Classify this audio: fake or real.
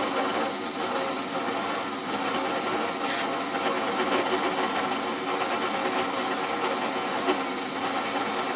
real